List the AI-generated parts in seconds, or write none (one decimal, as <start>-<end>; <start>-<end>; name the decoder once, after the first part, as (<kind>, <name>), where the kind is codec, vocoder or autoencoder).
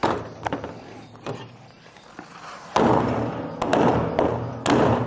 none